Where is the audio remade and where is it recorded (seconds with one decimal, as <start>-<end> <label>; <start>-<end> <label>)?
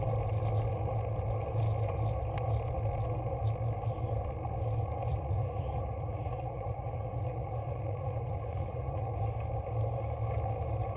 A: 0.0-5.1 recorded; 5.1-9.2 remade; 9.2-11.0 recorded